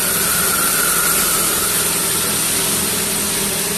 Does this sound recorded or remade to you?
recorded